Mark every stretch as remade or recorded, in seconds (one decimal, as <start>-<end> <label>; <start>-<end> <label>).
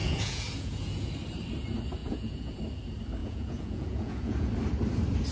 0.0-1.1 remade; 1.1-2.0 recorded; 2.0-2.6 remade; 2.6-3.2 recorded; 3.2-4.5 remade; 4.5-5.3 recorded